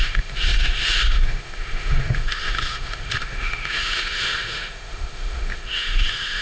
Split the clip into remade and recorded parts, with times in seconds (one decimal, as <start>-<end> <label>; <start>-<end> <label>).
0.0-6.4 remade